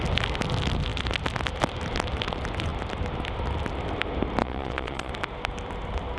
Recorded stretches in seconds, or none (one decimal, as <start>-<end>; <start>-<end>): 0.0-4.4; 5.1-6.2

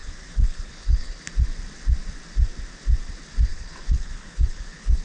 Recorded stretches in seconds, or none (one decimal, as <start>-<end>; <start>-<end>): 1.2-3.5

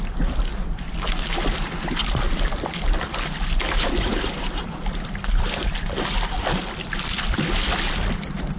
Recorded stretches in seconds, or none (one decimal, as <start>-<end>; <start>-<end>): 0.0-8.6

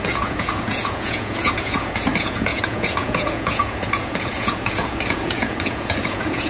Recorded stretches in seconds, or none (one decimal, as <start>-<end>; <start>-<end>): none

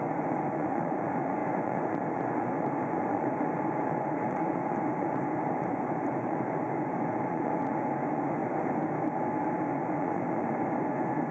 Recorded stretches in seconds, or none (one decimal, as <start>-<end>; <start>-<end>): 8.4-9.7